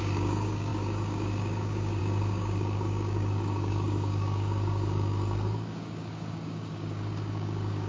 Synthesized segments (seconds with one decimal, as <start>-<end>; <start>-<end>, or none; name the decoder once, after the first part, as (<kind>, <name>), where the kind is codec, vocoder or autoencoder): 0.0-7.9 (codec, DAC)